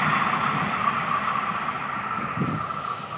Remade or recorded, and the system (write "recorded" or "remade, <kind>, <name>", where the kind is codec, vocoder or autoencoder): recorded